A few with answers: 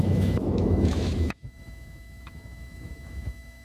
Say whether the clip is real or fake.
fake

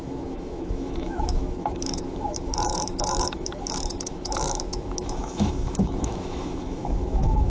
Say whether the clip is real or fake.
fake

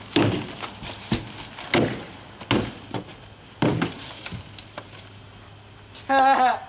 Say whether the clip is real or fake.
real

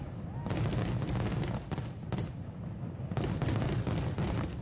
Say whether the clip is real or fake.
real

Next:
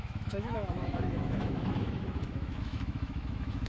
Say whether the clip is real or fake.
fake